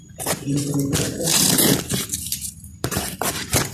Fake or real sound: fake